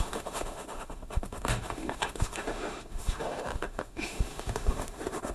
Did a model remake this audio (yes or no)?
yes